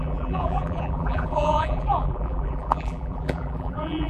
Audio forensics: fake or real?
fake